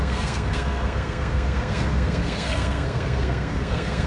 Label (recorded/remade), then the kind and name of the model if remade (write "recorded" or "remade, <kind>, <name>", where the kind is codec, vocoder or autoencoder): remade, codec, SNAC